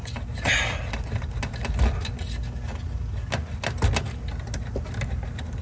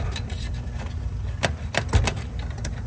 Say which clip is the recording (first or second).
first